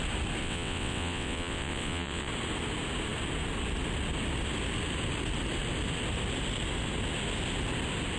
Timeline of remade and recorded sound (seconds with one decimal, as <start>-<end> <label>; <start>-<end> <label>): 0.0-0.4 recorded; 0.4-2.3 remade; 2.3-8.2 recorded